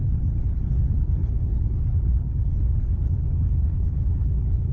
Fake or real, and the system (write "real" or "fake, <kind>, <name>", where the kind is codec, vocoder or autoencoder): fake, codec, HILCodec